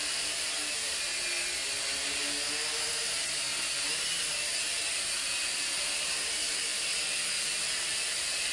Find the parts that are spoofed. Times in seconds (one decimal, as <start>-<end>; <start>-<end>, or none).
0.0-1.1; 2.9-3.5; 4.2-8.5